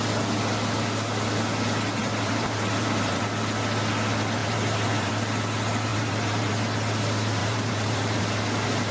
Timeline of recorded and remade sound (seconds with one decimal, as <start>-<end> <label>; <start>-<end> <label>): 0.0-2.0 recorded; 2.0-3.2 remade; 3.2-4.4 recorded; 4.4-5.1 remade; 5.1-5.9 recorded; 5.9-6.5 remade; 6.5-7.4 recorded; 7.4-8.2 remade; 8.2-8.9 recorded

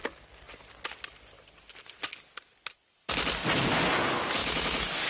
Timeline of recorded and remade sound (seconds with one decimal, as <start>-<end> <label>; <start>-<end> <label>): 0.0-4.4 recorded; 4.4-5.1 remade

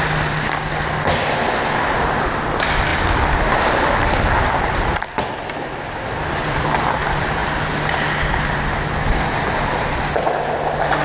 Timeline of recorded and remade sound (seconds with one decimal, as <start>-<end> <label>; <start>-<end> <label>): 0.0-11.0 recorded

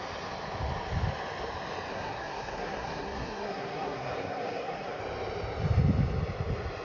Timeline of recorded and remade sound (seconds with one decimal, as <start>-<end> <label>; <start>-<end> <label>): 0.0-1.9 recorded; 1.9-5.0 remade; 5.0-6.8 recorded

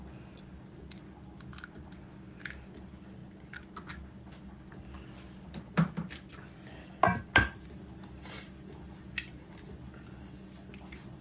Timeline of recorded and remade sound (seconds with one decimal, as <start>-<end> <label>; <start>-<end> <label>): 0.0-11.2 recorded

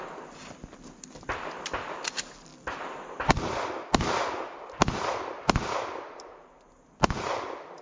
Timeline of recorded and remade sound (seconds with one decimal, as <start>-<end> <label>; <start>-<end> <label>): 0.0-7.8 recorded

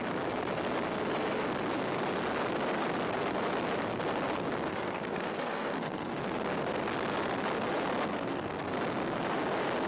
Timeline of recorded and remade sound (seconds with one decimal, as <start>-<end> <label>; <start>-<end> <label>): 0.0-4.7 recorded; 4.7-6.2 remade; 6.2-8.1 recorded; 8.1-8.7 remade; 8.7-9.9 recorded